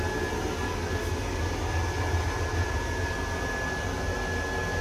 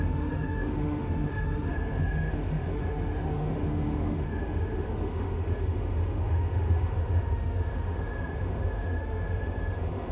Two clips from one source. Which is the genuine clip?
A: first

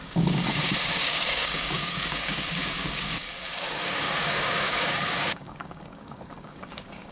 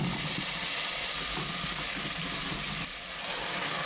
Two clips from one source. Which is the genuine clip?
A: second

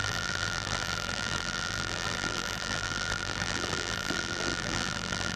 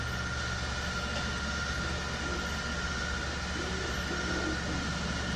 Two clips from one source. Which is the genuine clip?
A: second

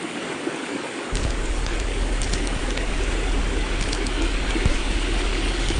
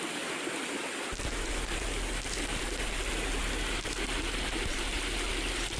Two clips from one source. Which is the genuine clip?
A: second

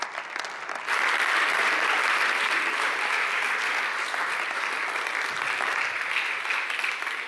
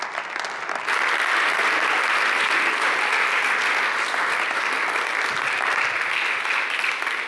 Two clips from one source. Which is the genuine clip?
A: second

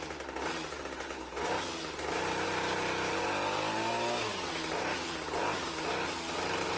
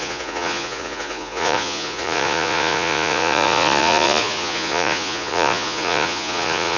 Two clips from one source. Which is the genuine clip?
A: first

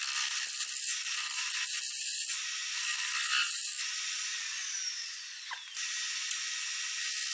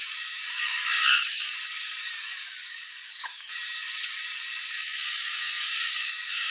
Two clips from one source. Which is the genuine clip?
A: first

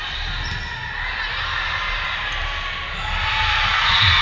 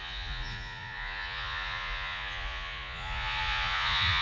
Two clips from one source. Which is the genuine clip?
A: first